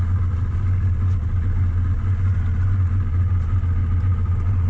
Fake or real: real